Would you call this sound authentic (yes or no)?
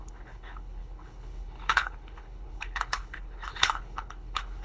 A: no